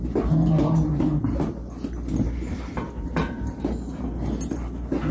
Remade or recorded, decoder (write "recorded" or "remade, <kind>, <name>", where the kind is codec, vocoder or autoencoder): recorded